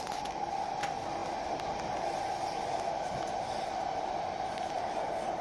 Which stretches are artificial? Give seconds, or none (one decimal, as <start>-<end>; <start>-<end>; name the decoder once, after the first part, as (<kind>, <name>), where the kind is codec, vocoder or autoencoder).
none